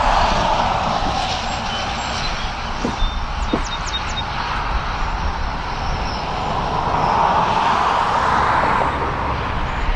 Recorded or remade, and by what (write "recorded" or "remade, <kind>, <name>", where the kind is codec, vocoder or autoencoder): recorded